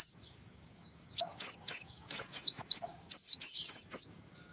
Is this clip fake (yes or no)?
yes